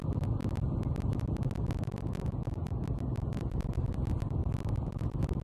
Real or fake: real